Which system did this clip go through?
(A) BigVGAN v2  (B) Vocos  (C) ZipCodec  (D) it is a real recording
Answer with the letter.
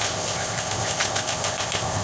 C